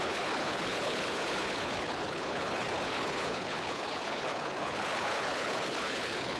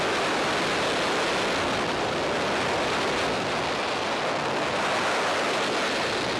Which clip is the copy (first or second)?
first